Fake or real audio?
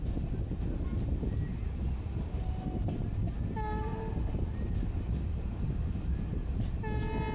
real